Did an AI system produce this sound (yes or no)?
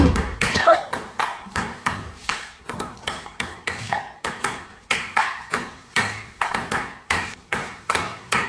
yes